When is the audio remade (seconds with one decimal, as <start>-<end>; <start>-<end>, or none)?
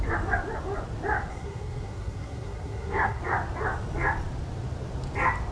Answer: 1.3-3.2